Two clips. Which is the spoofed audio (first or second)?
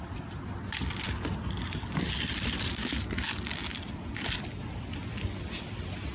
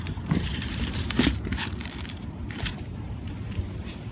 second